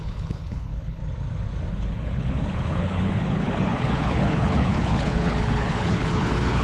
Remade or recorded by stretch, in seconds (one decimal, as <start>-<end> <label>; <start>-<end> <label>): 0.0-1.0 remade; 1.0-1.7 recorded; 1.7-6.6 remade